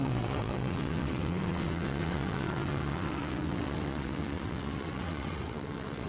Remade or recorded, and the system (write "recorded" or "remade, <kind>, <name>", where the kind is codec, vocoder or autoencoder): remade, vocoder, WaveNeXt